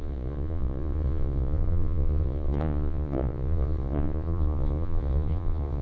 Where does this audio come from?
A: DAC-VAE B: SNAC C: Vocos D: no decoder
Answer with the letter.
C